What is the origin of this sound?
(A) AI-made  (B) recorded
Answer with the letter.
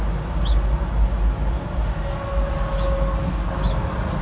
B